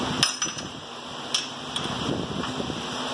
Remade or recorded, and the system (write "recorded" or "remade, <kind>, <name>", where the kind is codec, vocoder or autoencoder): recorded